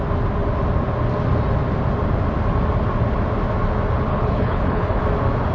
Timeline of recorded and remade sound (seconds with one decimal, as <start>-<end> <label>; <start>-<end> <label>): 0.0-4.1 recorded; 4.1-5.0 remade; 5.0-5.5 recorded